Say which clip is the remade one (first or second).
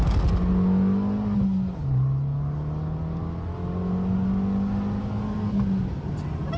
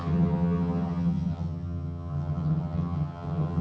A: second